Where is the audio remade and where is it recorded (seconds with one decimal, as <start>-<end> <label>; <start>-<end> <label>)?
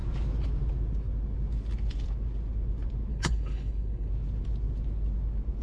0.0-3.1 recorded; 3.1-4.1 remade; 4.1-5.6 recorded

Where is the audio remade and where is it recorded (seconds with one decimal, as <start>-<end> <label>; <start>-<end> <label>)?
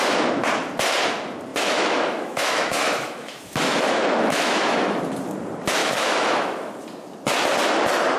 0.0-1.5 recorded; 1.5-5.0 remade; 5.0-5.8 recorded; 5.8-6.7 remade; 6.7-8.2 recorded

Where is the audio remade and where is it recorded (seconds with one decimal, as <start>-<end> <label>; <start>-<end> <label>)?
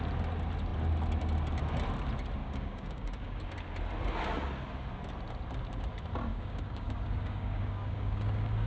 0.0-2.4 recorded; 2.4-3.4 remade; 3.4-6.3 recorded; 6.3-8.7 remade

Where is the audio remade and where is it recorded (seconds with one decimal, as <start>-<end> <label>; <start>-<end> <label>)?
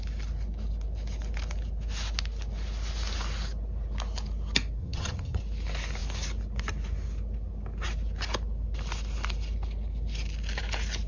0.0-4.8 recorded; 4.8-5.4 remade; 5.4-11.1 recorded